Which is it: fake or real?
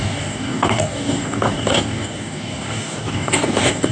fake